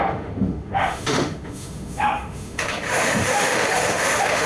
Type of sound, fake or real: fake